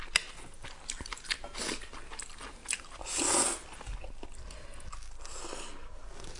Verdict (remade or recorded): recorded